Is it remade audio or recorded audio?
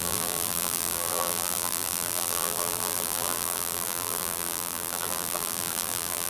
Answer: remade